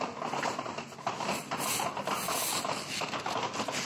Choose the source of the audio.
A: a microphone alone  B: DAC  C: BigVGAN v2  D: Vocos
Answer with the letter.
A